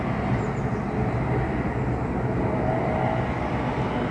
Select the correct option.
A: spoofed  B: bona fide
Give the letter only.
B